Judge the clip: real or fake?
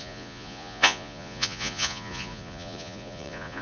fake